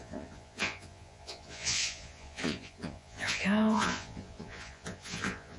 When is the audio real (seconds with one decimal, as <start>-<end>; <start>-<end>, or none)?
none